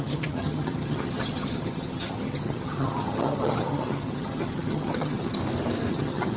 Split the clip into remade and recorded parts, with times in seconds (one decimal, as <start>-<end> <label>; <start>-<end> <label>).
0.0-5.4 remade; 5.4-5.9 recorded; 5.9-6.4 remade